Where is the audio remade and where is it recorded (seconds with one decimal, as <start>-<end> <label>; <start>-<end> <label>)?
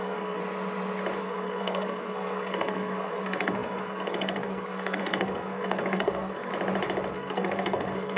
0.0-0.4 remade; 0.4-1.2 recorded; 1.2-6.5 remade; 6.5-7.1 recorded; 7.1-8.2 remade